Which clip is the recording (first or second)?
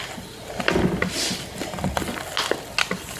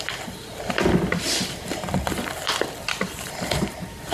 first